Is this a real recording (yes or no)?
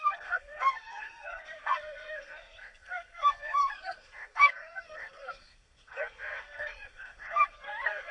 no